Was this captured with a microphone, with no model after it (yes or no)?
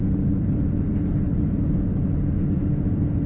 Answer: yes